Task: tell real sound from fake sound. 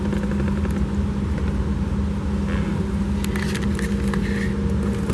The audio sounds real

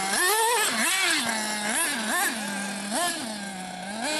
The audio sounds real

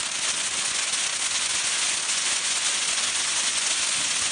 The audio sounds fake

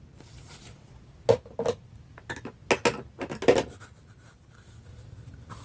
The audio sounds real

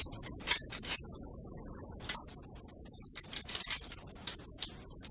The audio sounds fake